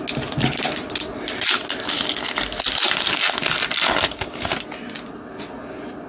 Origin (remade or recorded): recorded